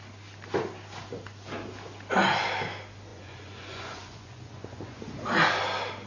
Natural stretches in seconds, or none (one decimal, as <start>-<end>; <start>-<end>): 0.0-3.1; 5.0-6.1